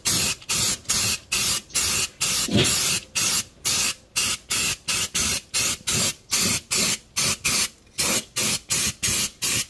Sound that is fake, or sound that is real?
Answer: real